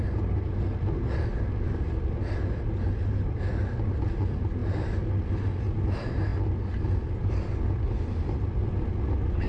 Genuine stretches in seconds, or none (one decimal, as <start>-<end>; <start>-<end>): 0.0-9.5